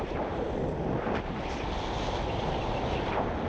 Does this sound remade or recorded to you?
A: recorded